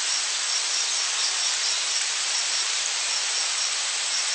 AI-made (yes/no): yes